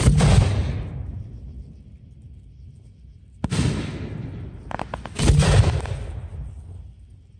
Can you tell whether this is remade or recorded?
recorded